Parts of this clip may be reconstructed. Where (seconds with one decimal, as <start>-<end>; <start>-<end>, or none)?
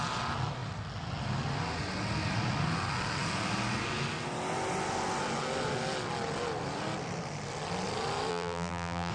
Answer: 8.3-9.1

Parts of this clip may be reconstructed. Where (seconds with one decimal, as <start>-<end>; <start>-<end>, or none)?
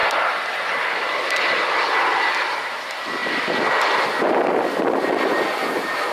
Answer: 2.1-2.6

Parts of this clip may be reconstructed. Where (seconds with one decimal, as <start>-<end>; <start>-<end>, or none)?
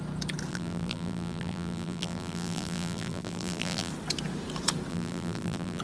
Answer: 0.5-3.9; 4.9-5.8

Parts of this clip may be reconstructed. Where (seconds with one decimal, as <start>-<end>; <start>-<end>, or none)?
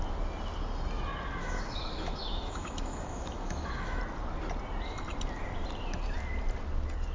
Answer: 1.4-4.0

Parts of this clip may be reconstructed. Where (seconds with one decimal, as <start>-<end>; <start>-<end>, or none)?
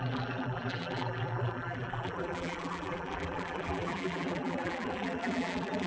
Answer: 0.0-5.9